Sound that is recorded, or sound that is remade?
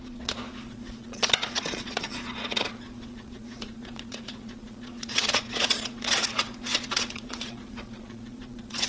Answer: remade